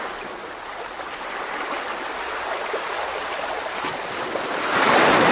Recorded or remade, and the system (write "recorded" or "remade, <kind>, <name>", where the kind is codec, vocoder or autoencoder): recorded